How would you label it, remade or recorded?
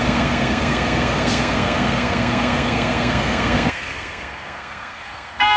remade